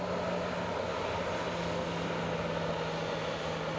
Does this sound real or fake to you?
real